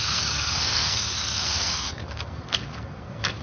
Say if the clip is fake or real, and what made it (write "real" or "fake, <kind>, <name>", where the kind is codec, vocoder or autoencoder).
fake, codec, SNAC